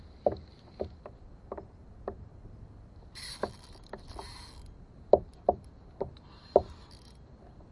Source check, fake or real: real